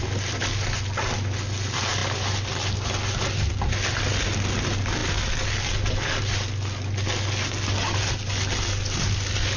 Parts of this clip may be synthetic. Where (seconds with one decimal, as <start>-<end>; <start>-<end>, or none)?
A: none